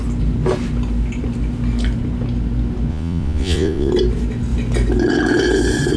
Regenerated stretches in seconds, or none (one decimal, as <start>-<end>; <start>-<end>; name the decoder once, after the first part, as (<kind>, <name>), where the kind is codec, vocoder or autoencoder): 2.9-3.9 (vocoder, Vocos)